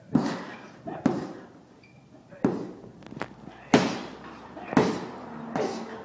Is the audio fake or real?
real